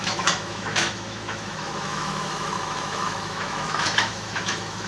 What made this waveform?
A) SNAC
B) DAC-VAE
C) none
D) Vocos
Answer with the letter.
B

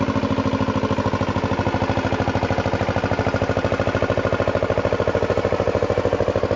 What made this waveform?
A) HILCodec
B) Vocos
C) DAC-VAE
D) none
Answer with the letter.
D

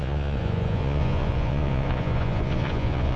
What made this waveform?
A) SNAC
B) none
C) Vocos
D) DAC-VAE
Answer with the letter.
C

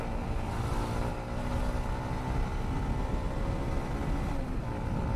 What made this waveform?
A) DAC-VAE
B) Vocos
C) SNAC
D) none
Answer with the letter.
D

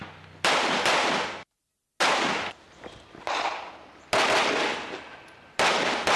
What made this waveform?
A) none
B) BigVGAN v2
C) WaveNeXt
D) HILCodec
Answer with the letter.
A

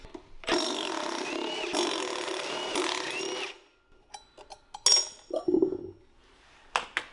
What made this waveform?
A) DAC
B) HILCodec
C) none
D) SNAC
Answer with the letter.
C